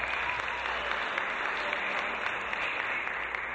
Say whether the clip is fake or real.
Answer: real